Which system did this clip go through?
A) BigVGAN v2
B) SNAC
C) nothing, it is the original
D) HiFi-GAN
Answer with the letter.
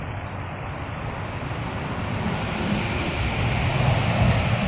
A